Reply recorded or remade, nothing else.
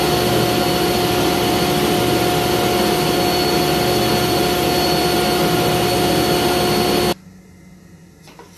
recorded